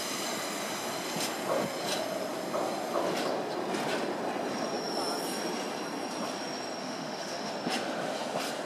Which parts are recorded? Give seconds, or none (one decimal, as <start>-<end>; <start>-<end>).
0.0-6.8; 7.5-8.7